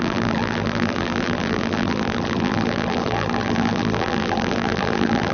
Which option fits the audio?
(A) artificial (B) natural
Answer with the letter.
A